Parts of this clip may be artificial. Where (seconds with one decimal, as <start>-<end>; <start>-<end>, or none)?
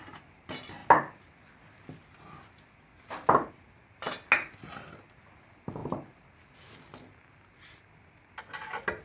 none